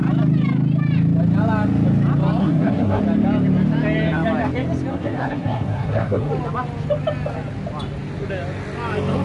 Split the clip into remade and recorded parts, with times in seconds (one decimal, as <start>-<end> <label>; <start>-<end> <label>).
0.0-2.4 recorded; 2.4-3.0 remade; 3.0-4.9 recorded; 4.9-6.3 remade; 6.3-9.2 recorded